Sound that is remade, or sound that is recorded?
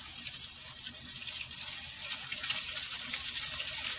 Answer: recorded